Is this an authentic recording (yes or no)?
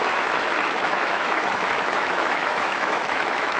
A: no